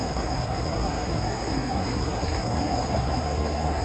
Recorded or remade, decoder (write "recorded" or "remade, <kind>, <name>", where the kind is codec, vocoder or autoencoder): remade, codec, SNAC